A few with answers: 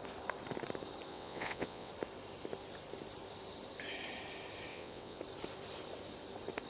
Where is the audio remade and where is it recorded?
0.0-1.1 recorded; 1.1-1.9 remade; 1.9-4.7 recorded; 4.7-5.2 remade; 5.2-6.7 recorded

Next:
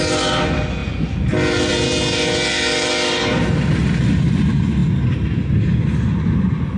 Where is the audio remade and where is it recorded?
0.0-6.8 recorded

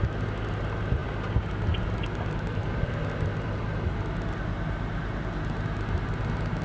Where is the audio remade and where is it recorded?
0.0-6.6 recorded